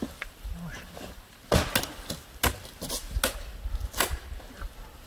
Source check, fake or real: real